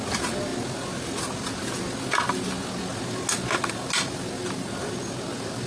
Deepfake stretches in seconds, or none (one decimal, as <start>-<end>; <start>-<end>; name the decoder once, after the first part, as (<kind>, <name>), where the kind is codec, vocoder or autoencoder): none

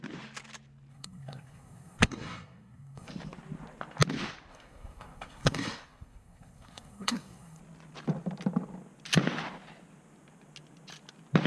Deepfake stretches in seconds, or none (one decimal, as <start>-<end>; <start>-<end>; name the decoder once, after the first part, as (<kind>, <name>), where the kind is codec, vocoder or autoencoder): 0.9-3.1 (codec, SNAC); 4.5-7.6